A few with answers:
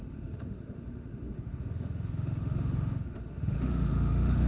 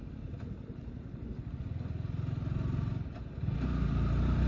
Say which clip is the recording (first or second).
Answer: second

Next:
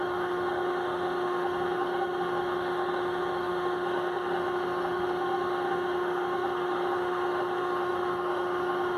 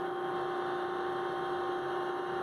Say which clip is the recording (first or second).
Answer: second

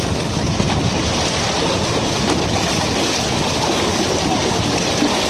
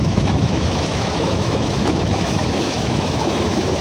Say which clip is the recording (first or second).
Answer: first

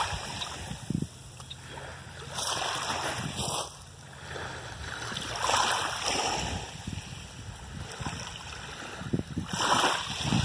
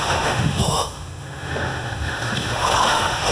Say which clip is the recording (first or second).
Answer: first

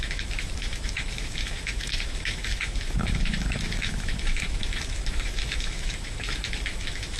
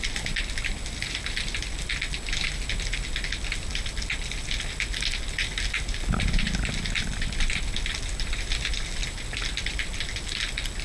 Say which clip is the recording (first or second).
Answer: second